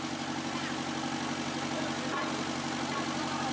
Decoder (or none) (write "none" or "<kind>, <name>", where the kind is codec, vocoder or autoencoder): none